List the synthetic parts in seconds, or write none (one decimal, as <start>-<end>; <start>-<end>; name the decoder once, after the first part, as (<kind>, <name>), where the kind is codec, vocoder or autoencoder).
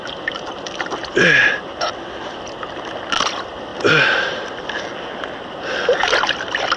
none